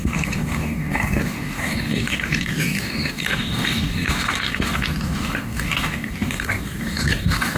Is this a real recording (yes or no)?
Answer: no